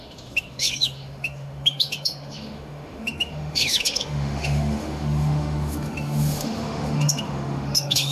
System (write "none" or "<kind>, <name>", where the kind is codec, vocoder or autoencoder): autoencoder, DAC-VAE